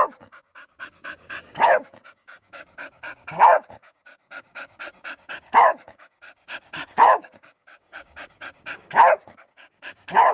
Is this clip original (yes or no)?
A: no